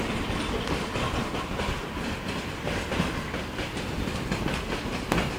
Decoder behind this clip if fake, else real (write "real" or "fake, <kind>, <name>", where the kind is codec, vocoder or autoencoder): real